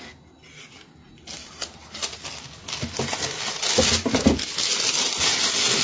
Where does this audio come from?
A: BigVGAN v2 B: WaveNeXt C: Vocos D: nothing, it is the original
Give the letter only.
D